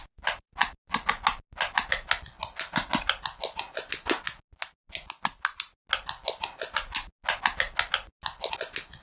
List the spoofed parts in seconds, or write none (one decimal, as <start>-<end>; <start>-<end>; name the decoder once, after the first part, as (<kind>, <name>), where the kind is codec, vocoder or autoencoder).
none